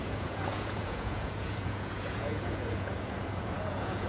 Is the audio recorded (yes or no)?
no